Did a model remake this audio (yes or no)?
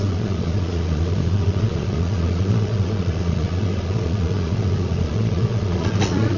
yes